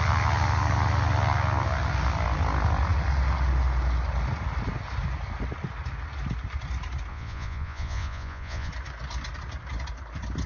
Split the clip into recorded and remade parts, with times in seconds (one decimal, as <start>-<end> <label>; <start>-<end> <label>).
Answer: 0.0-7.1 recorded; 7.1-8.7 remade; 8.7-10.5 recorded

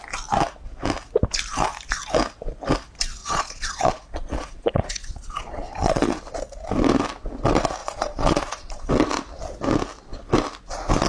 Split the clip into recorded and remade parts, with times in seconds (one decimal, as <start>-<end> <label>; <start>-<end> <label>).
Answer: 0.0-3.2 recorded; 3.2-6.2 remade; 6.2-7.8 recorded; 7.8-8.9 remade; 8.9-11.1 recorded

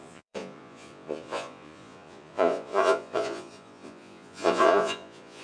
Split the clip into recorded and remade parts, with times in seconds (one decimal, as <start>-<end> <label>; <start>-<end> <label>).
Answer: 0.0-5.4 remade